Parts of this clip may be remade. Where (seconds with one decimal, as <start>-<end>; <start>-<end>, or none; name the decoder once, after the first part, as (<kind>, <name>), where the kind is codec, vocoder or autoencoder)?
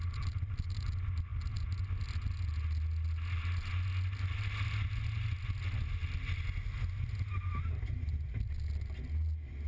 none